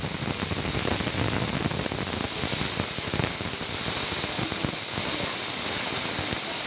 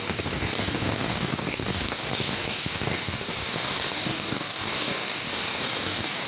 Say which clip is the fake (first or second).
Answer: second